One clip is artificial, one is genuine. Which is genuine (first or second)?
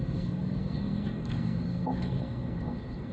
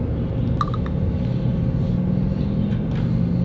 second